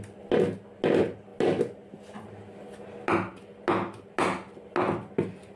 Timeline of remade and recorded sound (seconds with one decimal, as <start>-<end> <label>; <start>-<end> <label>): 0.0-5.6 recorded